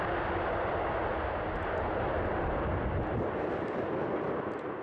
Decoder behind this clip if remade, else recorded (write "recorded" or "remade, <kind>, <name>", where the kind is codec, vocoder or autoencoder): recorded